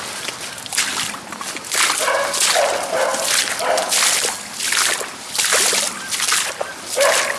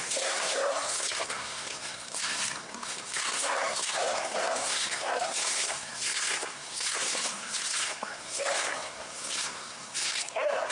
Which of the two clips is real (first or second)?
first